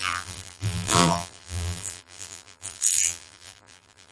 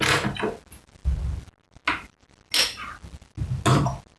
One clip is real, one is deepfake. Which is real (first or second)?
second